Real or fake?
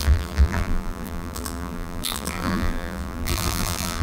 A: fake